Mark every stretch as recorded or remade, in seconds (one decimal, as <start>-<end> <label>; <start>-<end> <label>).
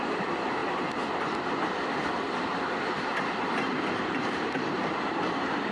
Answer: 0.0-0.6 remade; 0.6-4.0 recorded; 4.0-5.7 remade